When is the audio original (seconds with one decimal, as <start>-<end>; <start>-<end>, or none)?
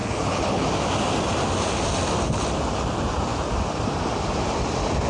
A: 0.6-5.1